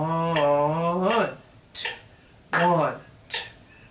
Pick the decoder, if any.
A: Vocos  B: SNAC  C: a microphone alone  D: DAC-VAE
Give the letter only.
C